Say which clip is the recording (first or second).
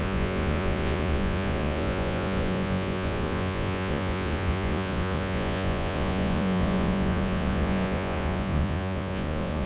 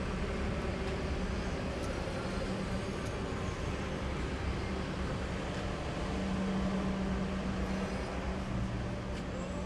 second